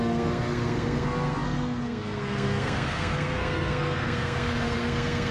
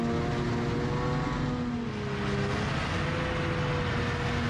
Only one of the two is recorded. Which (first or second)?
second